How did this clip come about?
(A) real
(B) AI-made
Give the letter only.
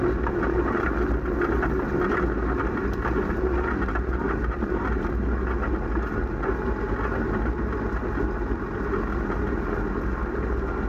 A